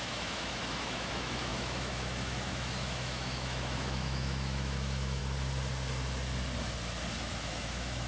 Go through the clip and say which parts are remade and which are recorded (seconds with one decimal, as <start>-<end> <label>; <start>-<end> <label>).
0.0-5.2 remade; 5.2-7.2 recorded; 7.2-8.1 remade